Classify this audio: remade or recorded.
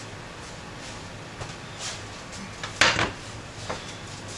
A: recorded